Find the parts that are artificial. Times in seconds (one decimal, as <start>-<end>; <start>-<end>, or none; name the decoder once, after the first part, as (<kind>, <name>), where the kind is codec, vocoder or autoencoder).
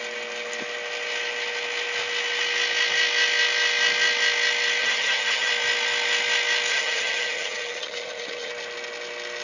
4.8-5.5 (vocoder, HiFi-GAN); 6.7-8.5